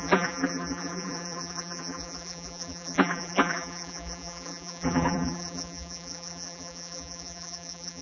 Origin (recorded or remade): remade